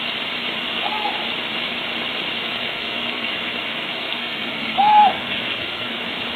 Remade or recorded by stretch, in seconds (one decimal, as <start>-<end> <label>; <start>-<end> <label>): 0.0-0.6 recorded; 0.6-1.1 remade; 1.1-2.4 recorded; 2.4-6.0 remade; 6.0-6.4 recorded